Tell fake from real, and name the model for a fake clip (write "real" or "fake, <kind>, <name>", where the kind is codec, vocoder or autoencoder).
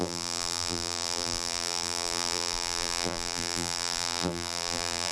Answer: fake, vocoder, BigVGAN v2